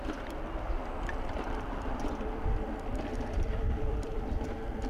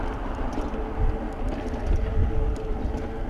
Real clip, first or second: second